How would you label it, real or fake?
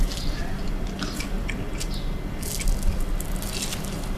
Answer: real